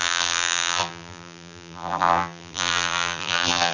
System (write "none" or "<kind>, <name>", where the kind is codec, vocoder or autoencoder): vocoder, BigVGAN v2